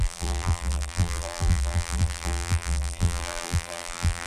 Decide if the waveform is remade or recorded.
remade